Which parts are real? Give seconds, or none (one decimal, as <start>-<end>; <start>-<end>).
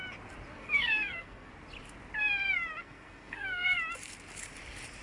0.0-0.5; 1.5-2.8; 3.8-5.0